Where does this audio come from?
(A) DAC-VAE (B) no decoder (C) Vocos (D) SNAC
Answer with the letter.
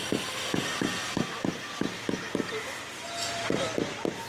B